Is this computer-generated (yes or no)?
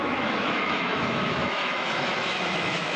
yes